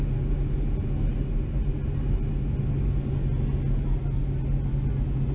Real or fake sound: real